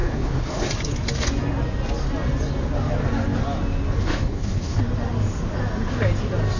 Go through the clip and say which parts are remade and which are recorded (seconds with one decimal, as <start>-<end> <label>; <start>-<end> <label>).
0.0-0.7 remade; 0.7-4.0 recorded; 4.0-4.8 remade; 4.8-6.6 recorded

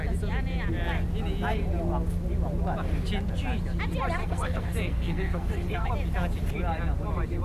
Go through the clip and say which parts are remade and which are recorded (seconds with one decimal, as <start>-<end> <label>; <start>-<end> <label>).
0.0-4.2 recorded; 4.2-5.9 remade; 5.9-7.4 recorded

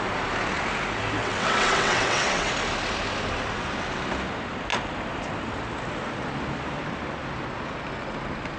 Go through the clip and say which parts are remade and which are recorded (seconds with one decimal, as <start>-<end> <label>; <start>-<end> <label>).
0.0-1.2 recorded; 1.2-2.5 remade; 2.5-8.6 recorded

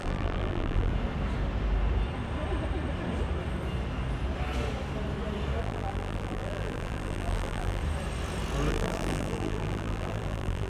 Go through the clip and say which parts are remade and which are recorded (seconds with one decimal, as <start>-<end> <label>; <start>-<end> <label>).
0.0-0.9 remade; 0.9-5.6 recorded; 5.6-7.8 remade; 7.8-8.7 recorded; 8.7-10.7 remade

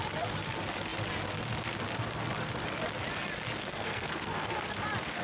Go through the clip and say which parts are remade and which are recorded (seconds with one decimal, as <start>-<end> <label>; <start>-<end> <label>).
0.0-3.6 recorded; 3.6-4.5 remade; 4.5-5.2 recorded